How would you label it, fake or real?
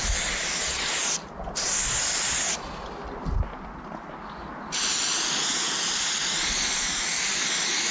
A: real